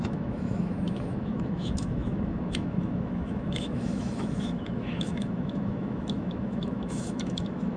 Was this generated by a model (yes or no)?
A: yes